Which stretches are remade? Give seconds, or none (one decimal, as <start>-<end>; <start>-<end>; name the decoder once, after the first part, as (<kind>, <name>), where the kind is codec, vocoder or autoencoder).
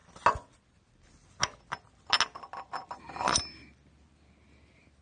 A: none